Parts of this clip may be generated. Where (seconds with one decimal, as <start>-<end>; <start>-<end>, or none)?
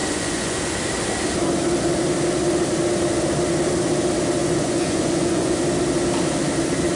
0.0-0.6; 4.4-5.6